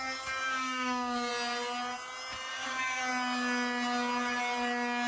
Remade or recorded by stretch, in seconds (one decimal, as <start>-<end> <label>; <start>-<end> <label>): 0.0-1.3 remade; 1.3-2.5 recorded; 2.5-3.0 remade; 3.0-5.1 recorded